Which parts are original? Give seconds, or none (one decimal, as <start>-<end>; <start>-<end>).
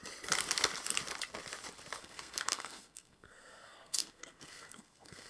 0.0-2.0